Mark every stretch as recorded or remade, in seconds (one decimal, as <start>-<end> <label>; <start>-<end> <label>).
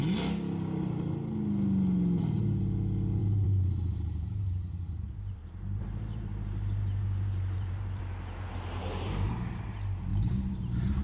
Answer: 0.0-3.2 recorded; 3.2-8.0 remade; 8.0-8.8 recorded; 8.8-9.3 remade; 9.3-10.1 recorded; 10.1-11.0 remade